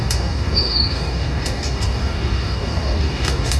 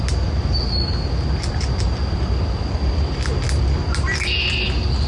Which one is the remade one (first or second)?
first